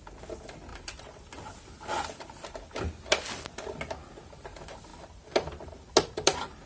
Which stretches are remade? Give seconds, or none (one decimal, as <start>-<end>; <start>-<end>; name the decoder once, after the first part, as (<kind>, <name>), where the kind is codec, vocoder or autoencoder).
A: 0.7-1.5 (vocoder, BigVGAN v2); 4.9-6.7